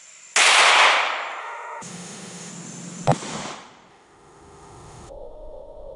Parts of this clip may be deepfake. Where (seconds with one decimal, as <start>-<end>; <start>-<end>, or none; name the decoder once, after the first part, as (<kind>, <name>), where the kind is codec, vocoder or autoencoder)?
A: 1.4-2.5 (autoencoder, DAC-VAE); 3.9-6.0